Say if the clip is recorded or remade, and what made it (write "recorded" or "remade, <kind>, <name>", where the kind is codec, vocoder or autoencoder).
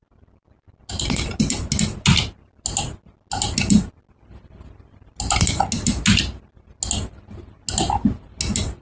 recorded